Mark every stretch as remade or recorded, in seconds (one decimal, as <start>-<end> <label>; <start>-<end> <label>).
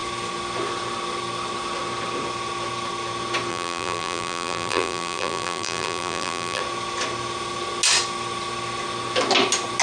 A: 0.0-3.5 recorded; 3.5-6.6 remade; 6.6-9.8 recorded